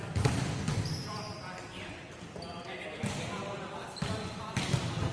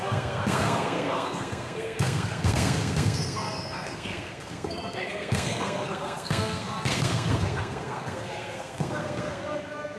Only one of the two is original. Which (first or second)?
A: first